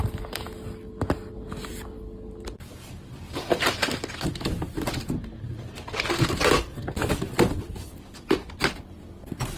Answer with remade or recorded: recorded